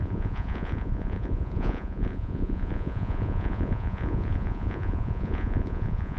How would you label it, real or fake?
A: fake